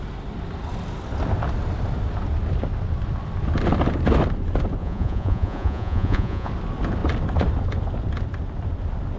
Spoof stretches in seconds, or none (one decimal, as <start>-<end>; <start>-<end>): 4.8-6.5